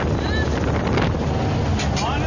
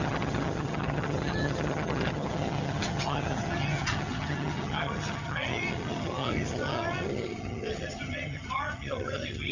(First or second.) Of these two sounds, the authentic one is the first